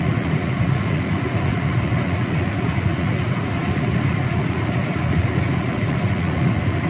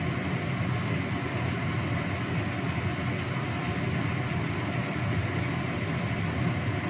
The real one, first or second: second